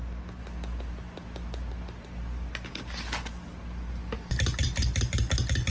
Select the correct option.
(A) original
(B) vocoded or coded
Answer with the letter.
A